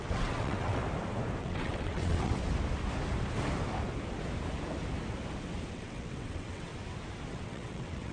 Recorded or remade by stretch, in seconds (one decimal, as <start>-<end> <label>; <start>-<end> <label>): 0.0-0.8 remade; 0.8-1.4 recorded; 1.4-2.4 remade; 2.4-5.7 recorded; 5.7-6.7 remade; 6.7-7.3 recorded; 7.3-8.1 remade